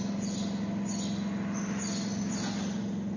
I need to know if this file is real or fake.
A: real